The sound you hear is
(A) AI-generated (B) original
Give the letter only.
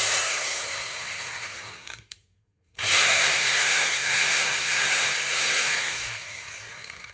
A